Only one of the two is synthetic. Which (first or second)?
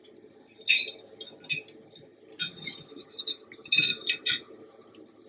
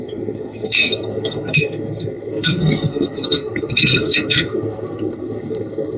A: second